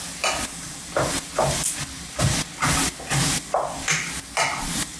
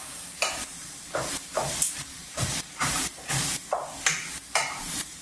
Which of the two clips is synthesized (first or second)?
second